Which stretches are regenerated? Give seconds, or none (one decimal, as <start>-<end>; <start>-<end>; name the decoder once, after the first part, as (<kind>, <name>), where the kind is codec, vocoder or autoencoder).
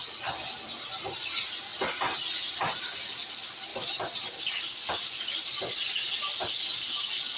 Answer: none